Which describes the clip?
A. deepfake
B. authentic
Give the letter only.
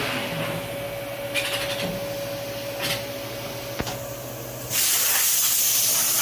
B